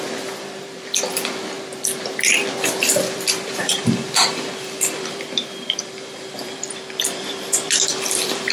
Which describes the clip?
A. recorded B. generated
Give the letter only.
B